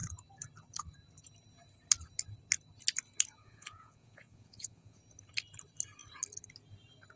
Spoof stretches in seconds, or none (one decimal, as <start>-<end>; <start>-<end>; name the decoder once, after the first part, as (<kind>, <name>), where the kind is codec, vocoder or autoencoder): 3.4-5.0 (vocoder, Vocos)